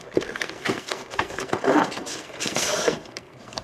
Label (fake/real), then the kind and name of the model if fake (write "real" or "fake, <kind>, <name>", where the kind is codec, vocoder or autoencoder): fake, codec, SNAC